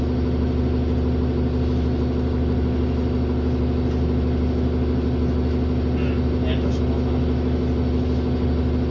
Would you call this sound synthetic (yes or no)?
no